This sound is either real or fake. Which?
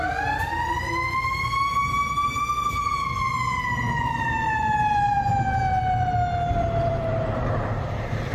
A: fake